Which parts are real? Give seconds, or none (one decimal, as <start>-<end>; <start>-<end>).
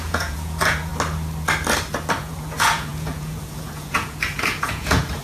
0.9-2.2